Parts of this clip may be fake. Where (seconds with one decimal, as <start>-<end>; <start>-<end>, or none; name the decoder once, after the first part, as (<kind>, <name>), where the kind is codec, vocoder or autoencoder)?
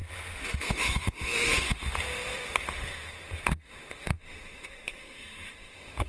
0.6-6.1 (autoencoder, DAC-VAE)